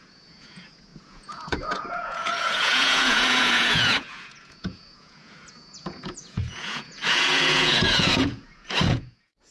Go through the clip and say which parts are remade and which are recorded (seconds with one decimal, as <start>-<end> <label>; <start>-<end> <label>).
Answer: 0.0-9.5 remade

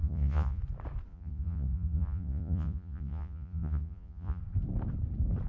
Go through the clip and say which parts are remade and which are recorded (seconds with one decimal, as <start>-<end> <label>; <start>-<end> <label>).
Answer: 0.0-0.6 remade; 0.6-1.1 recorded; 1.1-4.4 remade; 4.4-5.5 recorded